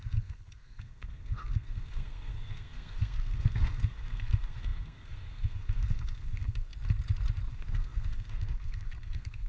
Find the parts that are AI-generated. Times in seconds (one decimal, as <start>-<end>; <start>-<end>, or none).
0.0-6.7; 7.5-9.5